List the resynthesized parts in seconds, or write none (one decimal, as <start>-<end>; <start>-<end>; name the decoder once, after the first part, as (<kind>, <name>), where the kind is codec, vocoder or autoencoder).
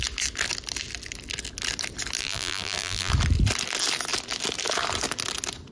2.2-3.1 (vocoder, BigVGAN v2)